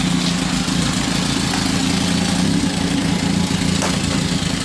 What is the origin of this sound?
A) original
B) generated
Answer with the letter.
A